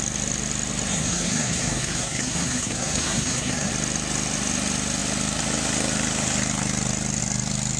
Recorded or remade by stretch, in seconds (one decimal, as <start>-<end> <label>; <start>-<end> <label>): 0.0-0.9 recorded; 0.9-3.7 remade; 3.7-7.8 recorded